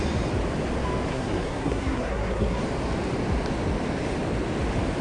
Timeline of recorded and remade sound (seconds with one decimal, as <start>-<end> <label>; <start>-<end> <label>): 0.0-1.1 recorded; 1.1-2.6 remade; 2.6-5.0 recorded